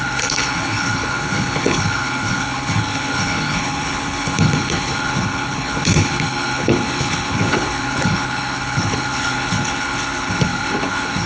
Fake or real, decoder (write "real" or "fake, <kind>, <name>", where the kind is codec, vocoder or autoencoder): fake, codec, HILCodec